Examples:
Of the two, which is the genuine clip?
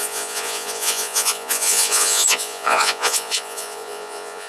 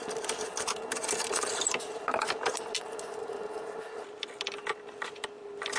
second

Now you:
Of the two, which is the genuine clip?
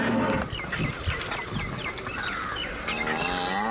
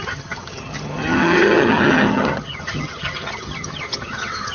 first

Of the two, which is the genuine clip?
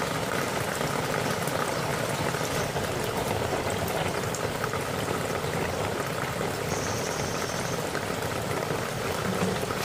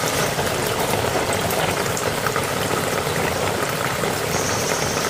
first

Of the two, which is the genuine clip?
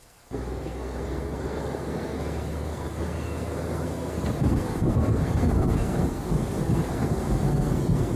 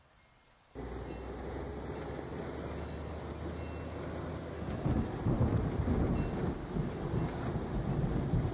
second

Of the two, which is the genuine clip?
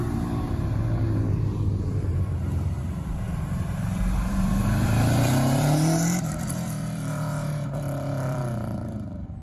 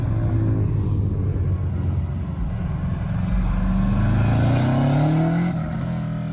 second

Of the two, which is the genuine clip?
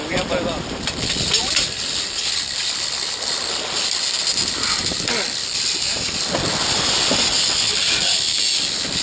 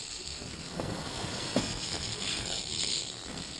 first